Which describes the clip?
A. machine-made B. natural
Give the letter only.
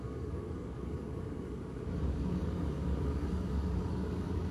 A